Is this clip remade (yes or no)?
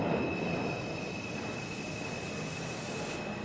no